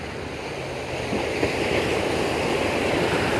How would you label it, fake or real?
real